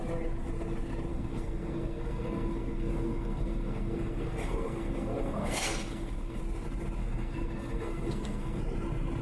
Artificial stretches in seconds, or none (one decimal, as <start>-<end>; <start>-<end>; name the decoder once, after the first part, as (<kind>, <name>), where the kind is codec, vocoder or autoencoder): 1.1-6.4 (codec, SNAC); 7.0-8.6